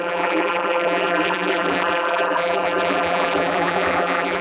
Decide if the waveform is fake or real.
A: fake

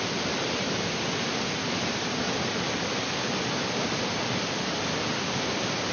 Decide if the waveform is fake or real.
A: real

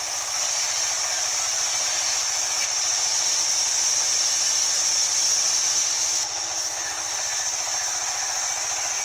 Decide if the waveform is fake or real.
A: real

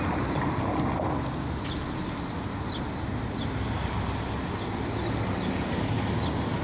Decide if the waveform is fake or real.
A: real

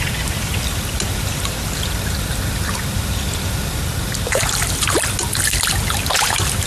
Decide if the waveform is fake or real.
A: real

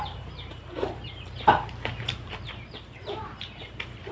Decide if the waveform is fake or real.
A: fake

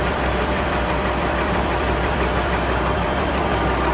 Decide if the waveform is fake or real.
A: fake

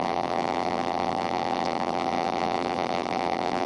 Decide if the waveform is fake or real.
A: fake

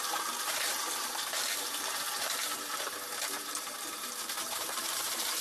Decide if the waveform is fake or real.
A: fake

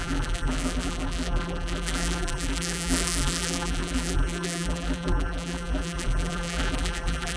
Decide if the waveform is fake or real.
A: fake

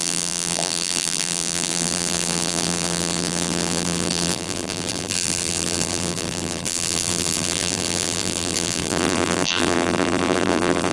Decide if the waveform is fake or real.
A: fake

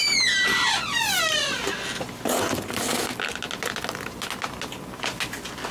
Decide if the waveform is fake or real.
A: real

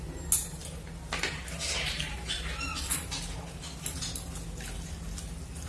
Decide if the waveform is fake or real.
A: real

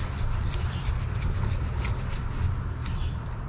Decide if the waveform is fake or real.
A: fake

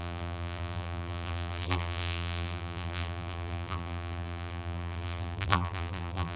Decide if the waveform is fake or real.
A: fake